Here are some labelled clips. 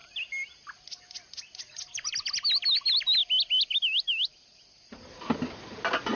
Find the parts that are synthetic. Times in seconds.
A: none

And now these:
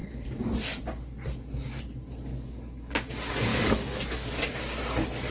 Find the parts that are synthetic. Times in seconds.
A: 2.3-3.1; 3.5-4.5

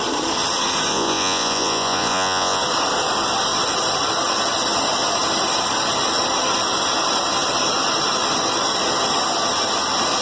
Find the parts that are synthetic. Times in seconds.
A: 0.9-2.6

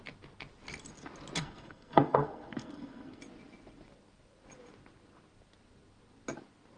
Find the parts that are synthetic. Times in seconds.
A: 1.4-3.2

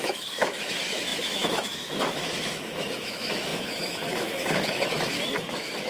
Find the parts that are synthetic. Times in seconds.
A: 0.0-5.9

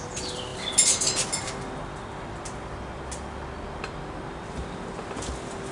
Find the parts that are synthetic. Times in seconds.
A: none